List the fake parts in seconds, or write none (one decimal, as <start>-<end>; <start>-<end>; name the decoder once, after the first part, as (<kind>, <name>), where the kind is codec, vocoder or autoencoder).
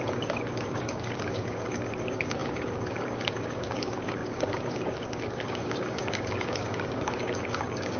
0.0-8.0 (codec, DAC)